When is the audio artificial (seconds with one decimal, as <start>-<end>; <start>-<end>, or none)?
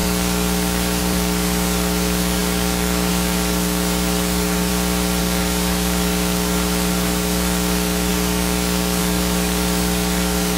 0.0-4.7; 5.2-10.6